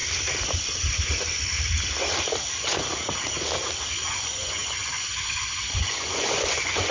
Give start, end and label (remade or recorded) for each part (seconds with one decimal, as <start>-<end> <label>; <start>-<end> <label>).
0.0-4.1 recorded; 4.1-6.9 remade